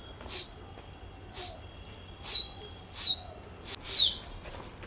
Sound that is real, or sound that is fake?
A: real